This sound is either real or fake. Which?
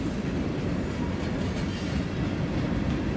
real